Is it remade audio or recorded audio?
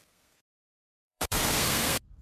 remade